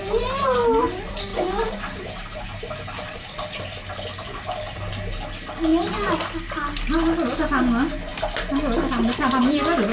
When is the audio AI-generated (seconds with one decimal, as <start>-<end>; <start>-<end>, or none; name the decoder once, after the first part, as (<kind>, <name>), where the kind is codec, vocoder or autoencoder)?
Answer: 1.3-2.7 (vocoder, BigVGAN v2)